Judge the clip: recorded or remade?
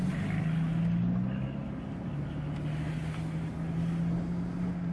recorded